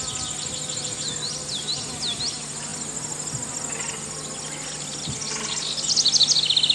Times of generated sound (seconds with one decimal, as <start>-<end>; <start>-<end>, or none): none